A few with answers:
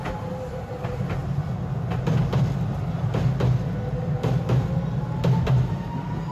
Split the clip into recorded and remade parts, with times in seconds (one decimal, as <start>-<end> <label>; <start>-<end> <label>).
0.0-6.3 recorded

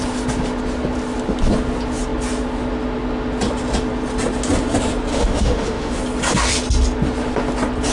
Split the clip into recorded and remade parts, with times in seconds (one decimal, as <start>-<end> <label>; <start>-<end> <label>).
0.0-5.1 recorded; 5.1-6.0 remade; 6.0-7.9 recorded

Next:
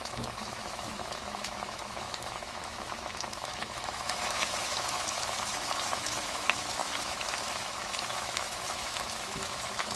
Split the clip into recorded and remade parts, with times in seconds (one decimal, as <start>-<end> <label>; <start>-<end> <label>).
0.0-10.0 remade

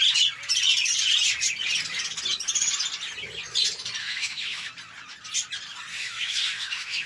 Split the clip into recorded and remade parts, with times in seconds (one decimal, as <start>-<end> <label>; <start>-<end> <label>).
0.0-4.0 recorded; 4.0-4.7 remade; 4.7-5.9 recorded; 5.9-7.1 remade

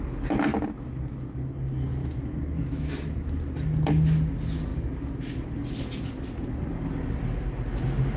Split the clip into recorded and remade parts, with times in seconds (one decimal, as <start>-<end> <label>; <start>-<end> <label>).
0.0-2.0 recorded; 2.0-3.4 remade; 3.4-8.2 recorded

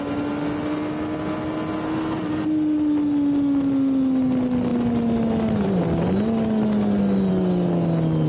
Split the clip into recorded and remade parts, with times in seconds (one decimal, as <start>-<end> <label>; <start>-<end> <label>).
0.0-8.3 recorded

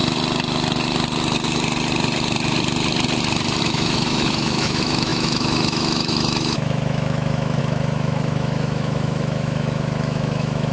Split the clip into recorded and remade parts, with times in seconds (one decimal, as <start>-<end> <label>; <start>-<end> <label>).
0.0-3.6 recorded; 3.6-10.7 remade

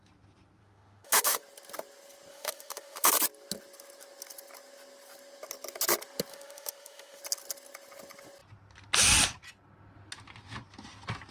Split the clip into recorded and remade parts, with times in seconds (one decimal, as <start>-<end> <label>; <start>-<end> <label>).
0.0-0.6 recorded; 0.6-1.4 remade; 1.4-2.3 recorded; 2.3-3.1 remade; 3.1-6.3 recorded; 6.3-7.2 remade; 7.2-11.3 recorded